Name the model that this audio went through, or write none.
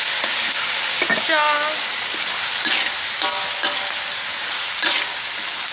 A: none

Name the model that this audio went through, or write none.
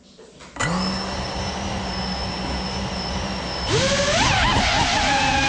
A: none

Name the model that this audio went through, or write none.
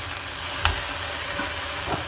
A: none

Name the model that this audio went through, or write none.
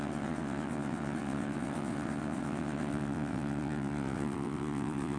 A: vocoder, WaveNeXt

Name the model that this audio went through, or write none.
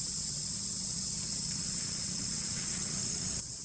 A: vocoder, WaveNeXt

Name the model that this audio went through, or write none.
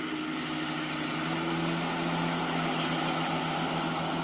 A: none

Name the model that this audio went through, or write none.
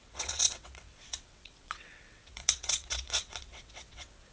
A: vocoder, WaveNeXt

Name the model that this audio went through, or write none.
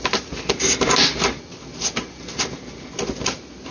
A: none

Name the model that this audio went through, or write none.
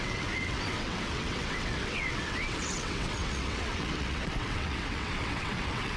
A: vocoder, WaveNeXt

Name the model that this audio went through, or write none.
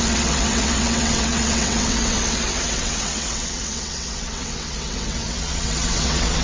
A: vocoder, WaveNeXt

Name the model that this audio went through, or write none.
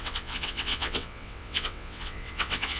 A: vocoder, WaveNeXt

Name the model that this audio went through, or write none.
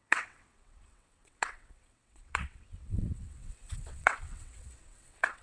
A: vocoder, WaveNeXt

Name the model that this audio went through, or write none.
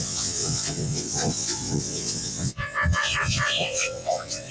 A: vocoder, WaveNeXt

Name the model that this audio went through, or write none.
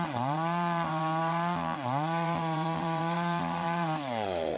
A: vocoder, WaveNeXt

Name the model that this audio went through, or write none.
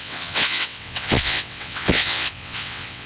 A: vocoder, WaveNeXt